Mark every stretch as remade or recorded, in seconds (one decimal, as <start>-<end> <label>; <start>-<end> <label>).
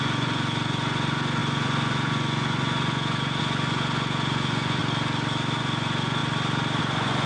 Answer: 0.0-4.8 remade; 4.8-5.6 recorded; 5.6-6.2 remade; 6.2-6.8 recorded; 6.8-7.3 remade